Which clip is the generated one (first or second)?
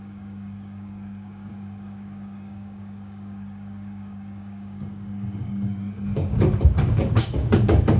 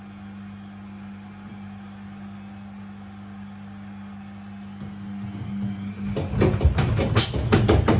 first